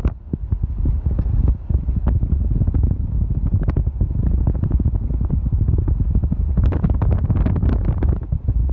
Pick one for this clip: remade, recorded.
recorded